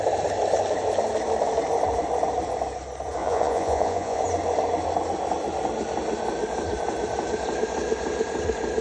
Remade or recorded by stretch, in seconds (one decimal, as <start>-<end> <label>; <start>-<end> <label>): 0.0-3.2 recorded; 3.2-4.2 remade; 4.2-8.8 recorded